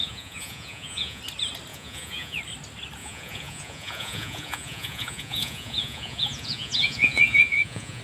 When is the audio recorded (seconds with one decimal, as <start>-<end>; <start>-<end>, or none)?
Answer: 1.2-1.7; 2.4-3.0